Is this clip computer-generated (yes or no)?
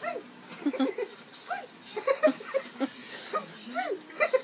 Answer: no